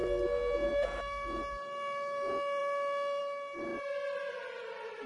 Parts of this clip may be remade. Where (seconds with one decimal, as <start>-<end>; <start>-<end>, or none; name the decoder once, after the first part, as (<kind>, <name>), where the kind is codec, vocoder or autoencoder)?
none